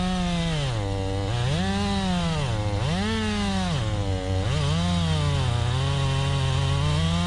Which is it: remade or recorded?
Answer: recorded